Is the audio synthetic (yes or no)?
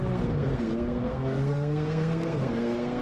yes